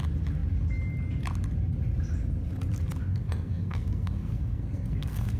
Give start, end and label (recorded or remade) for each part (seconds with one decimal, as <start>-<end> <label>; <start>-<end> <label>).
0.0-3.1 recorded; 3.1-5.4 remade